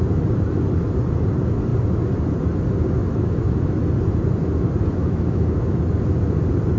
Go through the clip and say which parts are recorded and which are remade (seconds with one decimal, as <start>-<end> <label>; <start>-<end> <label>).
0.0-3.0 recorded; 3.0-3.8 remade; 3.8-5.0 recorded; 5.0-5.8 remade; 5.8-6.8 recorded